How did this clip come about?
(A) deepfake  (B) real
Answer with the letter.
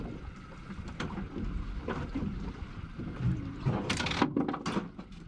B